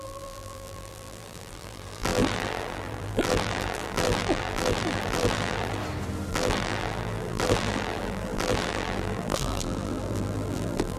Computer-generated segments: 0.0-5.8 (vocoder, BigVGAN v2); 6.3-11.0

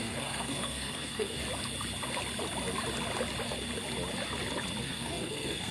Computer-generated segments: 0.0-1.4 (codec, SNAC); 4.8-5.7

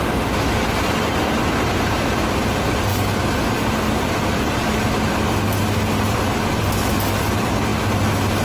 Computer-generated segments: none

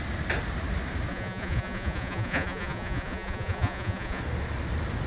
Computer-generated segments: 1.1-4.2 (vocoder, Vocos)